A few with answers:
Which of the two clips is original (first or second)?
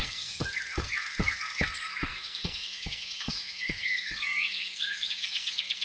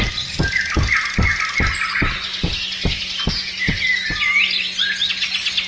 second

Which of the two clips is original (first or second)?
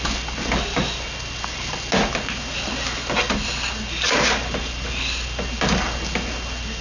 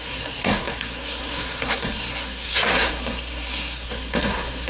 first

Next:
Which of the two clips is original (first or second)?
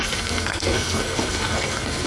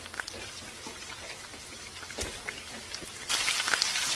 second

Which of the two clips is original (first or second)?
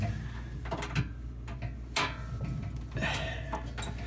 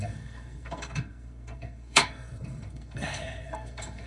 first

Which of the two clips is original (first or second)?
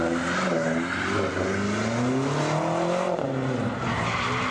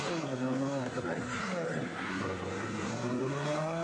first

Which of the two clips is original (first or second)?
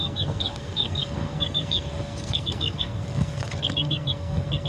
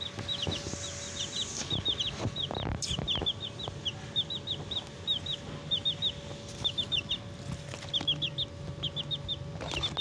second